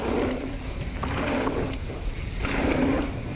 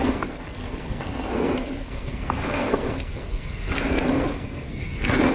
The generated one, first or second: second